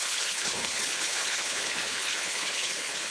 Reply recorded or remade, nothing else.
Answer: remade